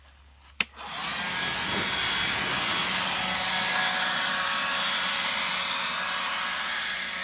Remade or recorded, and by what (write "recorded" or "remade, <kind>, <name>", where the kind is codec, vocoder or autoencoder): recorded